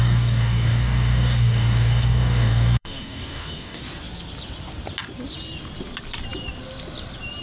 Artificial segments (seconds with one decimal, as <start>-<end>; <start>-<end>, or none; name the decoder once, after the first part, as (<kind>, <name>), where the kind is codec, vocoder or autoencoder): 0.0-3.8 (codec, DAC)